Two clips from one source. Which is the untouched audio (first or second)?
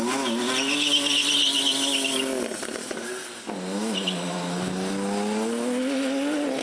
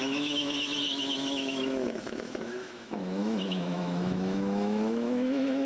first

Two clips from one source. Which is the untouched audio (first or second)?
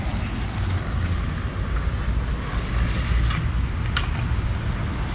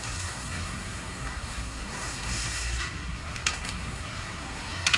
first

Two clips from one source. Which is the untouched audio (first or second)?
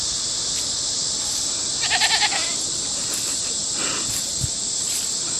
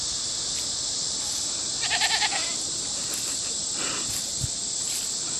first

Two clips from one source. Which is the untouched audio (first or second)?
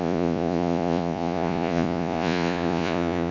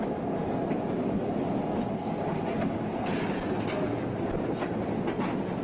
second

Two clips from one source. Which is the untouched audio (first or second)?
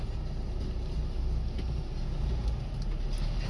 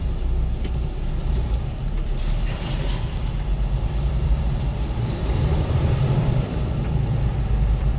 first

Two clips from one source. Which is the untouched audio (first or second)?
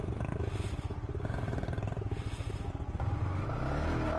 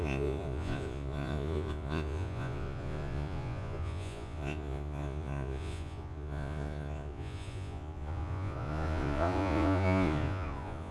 first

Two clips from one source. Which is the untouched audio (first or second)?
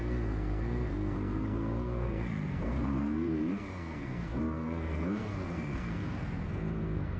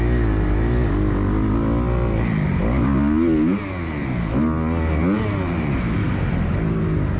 second